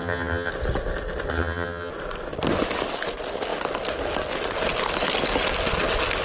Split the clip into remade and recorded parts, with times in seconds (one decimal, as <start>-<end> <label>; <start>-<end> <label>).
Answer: 0.0-0.5 remade; 0.5-1.3 recorded; 1.3-1.9 remade; 1.9-6.2 recorded

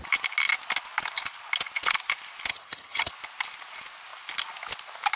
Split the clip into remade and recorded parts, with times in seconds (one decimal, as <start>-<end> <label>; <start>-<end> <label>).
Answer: 0.0-2.5 recorded; 2.5-3.1 remade; 3.1-5.2 recorded